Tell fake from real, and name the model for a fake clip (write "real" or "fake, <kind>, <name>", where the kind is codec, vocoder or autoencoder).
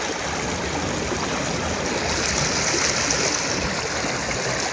real